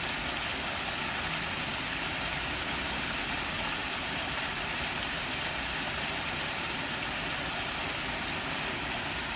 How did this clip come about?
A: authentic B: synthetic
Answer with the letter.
A